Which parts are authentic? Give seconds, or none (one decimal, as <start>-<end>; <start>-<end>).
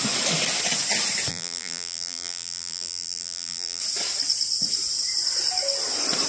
0.0-1.3; 3.8-6.3